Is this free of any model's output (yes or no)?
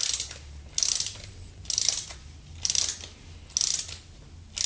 yes